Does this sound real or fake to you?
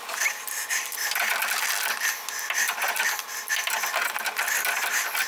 real